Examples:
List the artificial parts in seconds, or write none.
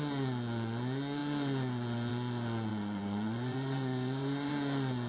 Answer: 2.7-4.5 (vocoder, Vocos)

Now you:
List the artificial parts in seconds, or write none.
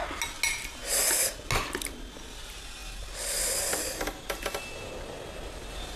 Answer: none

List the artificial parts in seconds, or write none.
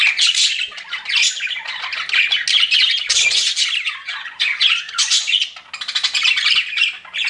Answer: 4.0-5.4 (vocoder, Vocos)